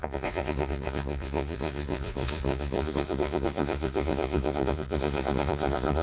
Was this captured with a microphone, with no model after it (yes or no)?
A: no